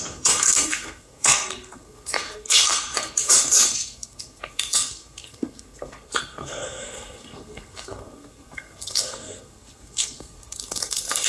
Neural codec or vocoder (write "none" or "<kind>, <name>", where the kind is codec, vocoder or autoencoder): codec, SNAC